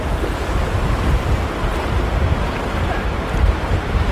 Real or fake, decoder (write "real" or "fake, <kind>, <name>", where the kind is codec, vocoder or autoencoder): fake, vocoder, BigVGAN v2